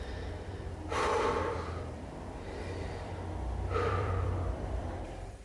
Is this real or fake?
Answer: fake